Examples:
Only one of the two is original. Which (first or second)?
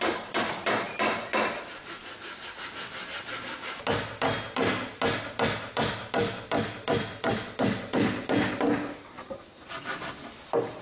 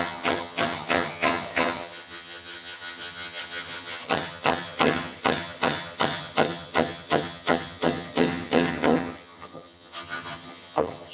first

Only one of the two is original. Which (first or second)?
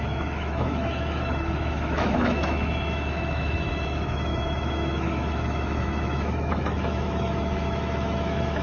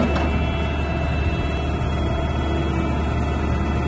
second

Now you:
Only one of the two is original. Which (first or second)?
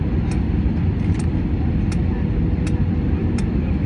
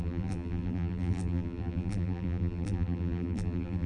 first